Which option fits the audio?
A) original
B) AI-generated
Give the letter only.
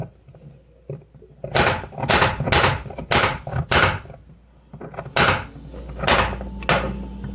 A